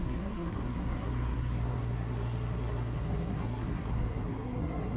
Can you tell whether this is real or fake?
fake